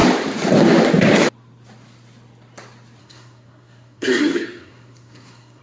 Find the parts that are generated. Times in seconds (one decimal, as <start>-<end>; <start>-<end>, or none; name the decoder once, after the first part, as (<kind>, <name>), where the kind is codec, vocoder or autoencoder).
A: 3.0-5.6 (codec, SNAC)